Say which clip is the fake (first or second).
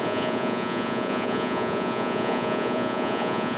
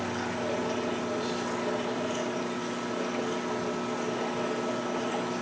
first